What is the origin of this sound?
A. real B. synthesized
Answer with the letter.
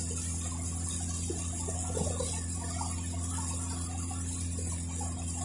A